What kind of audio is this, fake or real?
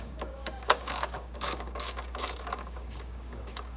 fake